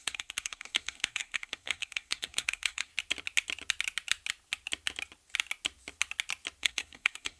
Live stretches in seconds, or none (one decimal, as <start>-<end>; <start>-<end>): 2.9-6.6